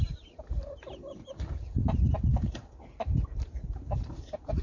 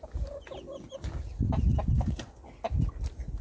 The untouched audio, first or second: second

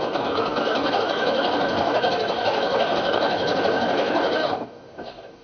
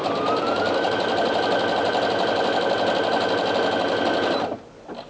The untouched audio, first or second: second